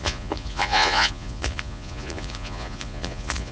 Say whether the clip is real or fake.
fake